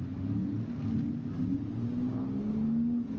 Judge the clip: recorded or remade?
recorded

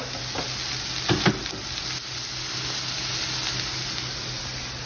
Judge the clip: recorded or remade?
recorded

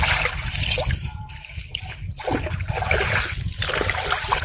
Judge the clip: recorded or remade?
recorded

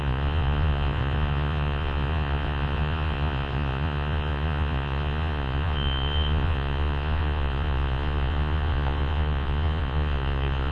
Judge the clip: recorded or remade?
remade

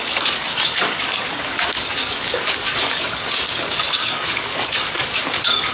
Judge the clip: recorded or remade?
remade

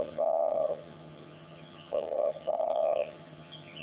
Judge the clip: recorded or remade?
remade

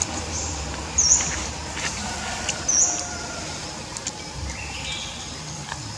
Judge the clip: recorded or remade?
recorded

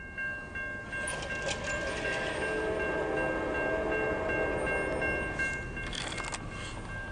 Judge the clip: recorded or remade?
recorded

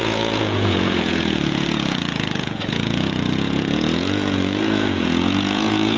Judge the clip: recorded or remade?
remade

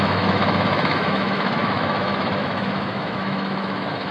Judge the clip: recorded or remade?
remade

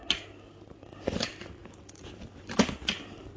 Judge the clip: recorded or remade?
recorded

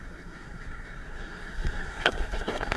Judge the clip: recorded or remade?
remade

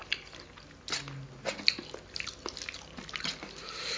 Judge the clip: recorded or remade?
recorded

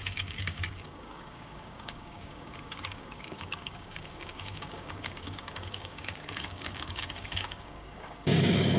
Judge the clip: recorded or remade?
remade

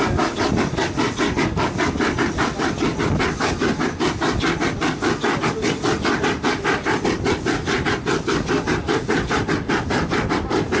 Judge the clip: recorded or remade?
recorded